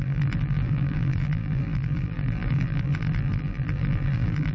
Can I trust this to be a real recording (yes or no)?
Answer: no